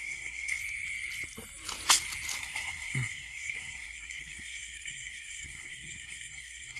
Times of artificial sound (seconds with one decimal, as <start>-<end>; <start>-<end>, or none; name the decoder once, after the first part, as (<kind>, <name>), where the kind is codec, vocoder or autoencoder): 0.0-0.6 (codec, SNAC); 2.4-6.8